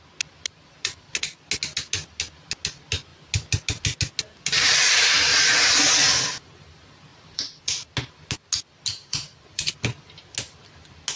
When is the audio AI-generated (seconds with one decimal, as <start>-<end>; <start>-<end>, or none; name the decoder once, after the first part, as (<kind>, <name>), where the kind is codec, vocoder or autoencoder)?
5.3-5.9 (vocoder, BigVGAN v2); 7.1-7.7; 9.0-9.8